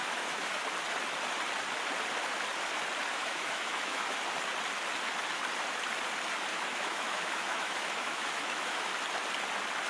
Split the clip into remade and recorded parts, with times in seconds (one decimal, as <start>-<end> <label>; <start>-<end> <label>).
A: 0.0-0.6 remade; 0.6-3.1 recorded; 3.1-4.2 remade; 4.2-6.5 recorded; 6.5-8.9 remade; 8.9-9.9 recorded